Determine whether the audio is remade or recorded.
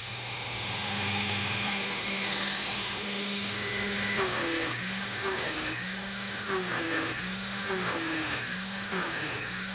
remade